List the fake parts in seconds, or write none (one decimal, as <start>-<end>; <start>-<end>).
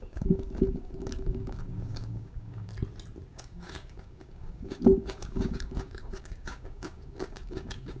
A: 0.0-2.7; 3.3-8.0